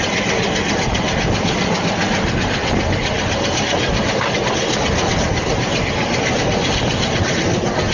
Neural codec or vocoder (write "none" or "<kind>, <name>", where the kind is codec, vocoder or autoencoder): none